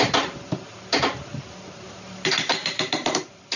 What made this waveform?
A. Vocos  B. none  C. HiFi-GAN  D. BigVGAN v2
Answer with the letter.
B